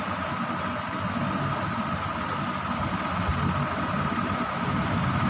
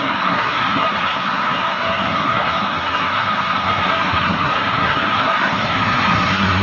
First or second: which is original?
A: first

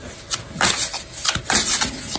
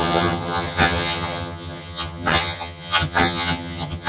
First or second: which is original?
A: first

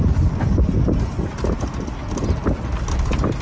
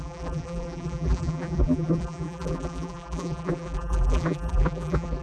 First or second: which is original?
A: first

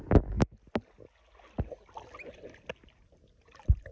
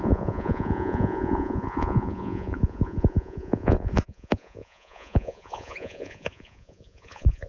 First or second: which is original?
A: first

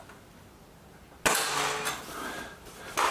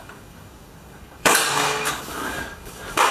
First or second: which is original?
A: first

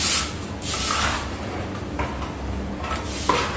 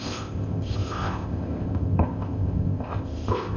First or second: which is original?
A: first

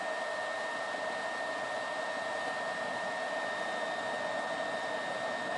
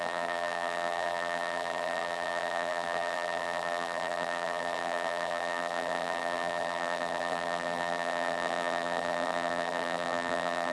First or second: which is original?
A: first